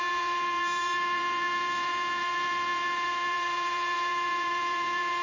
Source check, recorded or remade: remade